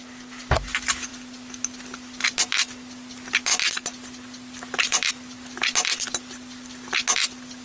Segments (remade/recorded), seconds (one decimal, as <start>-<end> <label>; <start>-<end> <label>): 0.0-7.6 recorded